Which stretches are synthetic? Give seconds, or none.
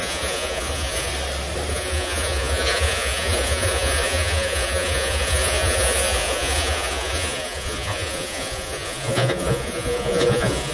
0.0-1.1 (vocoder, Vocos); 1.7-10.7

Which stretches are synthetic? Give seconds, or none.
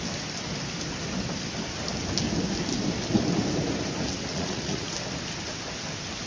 4.3-4.9 (vocoder, Vocos)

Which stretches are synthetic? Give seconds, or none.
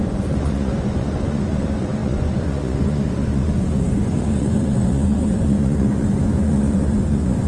0.0-7.5 (vocoder, Vocos)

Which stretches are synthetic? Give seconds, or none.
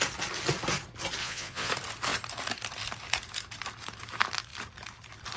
1.2-1.7 (vocoder, Vocos)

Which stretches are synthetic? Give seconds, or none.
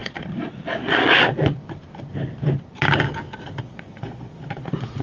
0.0-1.6 (vocoder, Vocos); 3.6-5.0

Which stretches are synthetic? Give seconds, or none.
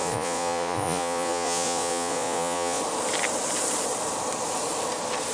0.0-2.8 (vocoder, Vocos)